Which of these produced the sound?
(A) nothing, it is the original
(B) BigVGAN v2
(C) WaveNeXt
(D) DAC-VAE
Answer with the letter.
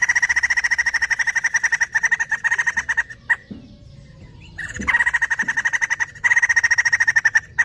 A